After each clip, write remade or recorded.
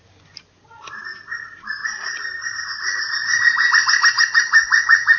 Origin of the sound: remade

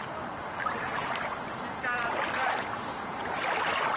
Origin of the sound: recorded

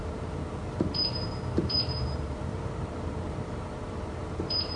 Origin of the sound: remade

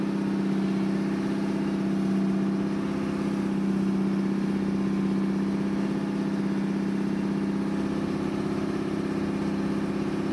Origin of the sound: recorded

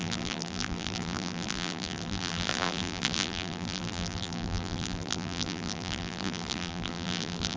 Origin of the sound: remade